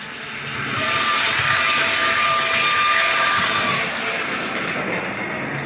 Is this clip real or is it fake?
real